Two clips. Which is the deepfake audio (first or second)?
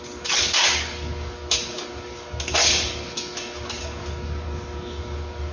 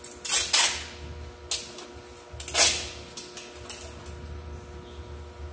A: first